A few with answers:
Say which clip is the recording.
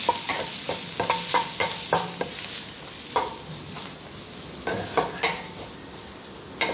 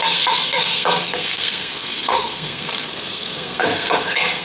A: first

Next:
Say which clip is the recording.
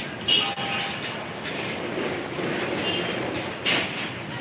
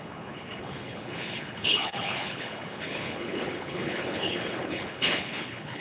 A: first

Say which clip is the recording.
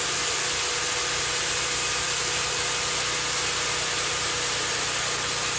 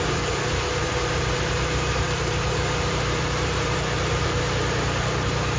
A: first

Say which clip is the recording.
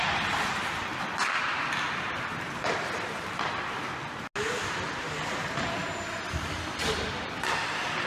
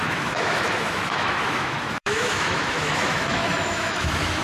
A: first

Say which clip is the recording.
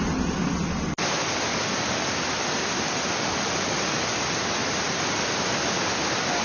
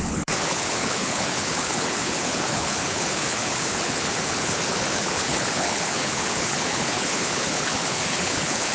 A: first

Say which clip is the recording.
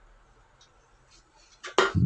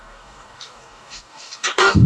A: first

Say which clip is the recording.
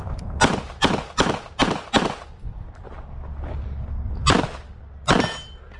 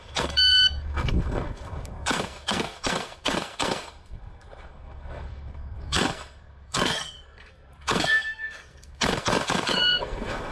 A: first